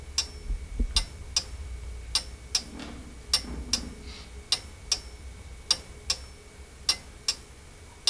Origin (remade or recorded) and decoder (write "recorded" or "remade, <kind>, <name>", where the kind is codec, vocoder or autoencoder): recorded